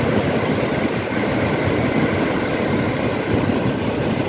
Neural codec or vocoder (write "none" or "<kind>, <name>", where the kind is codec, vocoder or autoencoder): none